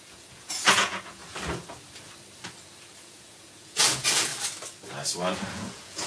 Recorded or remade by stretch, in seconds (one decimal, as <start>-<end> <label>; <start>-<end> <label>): 0.0-1.2 remade; 1.2-3.0 recorded; 3.0-4.3 remade; 4.3-5.5 recorded; 5.5-6.1 remade